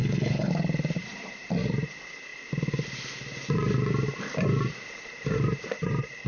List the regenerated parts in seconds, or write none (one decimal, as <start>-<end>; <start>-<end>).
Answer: 0.0-0.5